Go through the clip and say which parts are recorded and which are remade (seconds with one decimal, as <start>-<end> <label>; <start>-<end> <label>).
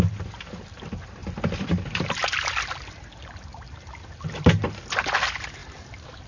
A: 0.0-1.2 recorded; 1.2-1.7 remade; 1.7-6.3 recorded